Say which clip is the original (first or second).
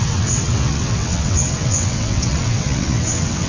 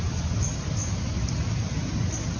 second